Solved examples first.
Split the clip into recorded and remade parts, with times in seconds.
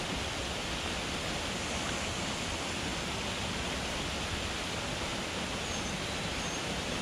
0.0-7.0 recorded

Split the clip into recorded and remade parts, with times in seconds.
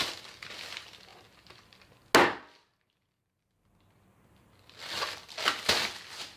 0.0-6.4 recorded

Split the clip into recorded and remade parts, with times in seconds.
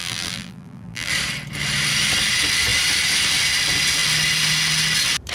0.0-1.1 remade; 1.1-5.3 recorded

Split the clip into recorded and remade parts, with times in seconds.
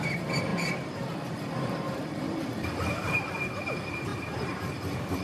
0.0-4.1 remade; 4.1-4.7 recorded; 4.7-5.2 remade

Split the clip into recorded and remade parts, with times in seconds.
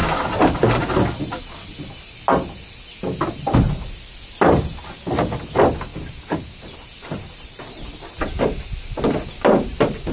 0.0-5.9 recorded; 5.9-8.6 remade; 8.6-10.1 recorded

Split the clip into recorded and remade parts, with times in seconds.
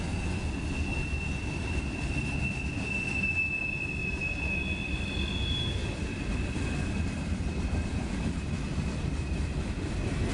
0.0-4.0 recorded; 4.0-5.0 remade; 5.0-5.8 recorded; 5.8-10.3 remade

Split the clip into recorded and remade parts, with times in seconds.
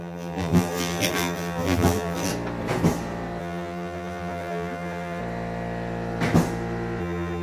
0.0-2.3 remade; 2.3-3.4 recorded; 3.4-5.2 remade; 5.2-7.0 recorded; 7.0-7.4 remade